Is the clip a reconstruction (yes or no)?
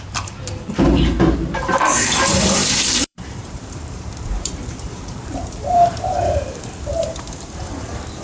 yes